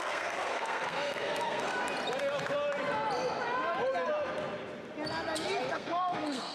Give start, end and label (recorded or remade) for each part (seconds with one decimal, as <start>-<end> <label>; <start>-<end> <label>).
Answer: 0.0-1.8 remade; 1.8-5.7 recorded; 5.7-6.5 remade